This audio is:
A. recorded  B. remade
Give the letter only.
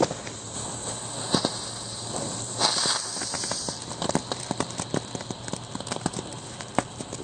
A